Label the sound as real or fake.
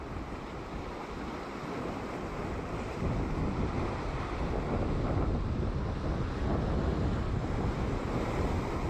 real